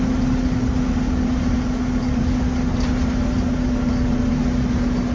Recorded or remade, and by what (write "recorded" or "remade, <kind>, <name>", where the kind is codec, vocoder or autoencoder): recorded